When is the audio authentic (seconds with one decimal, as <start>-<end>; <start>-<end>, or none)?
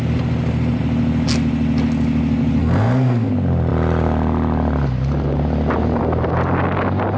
0.0-2.6; 3.3-7.2